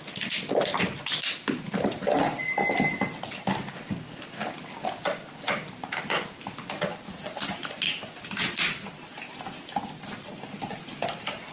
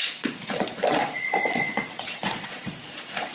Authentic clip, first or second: first